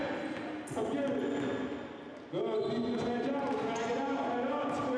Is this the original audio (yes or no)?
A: yes